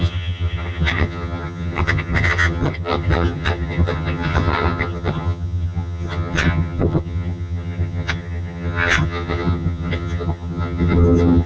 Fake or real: fake